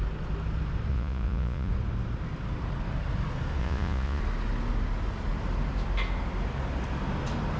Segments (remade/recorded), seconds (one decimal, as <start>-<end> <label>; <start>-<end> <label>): 0.0-0.9 recorded; 0.9-1.7 remade; 1.7-3.6 recorded; 3.6-4.2 remade; 4.2-7.6 recorded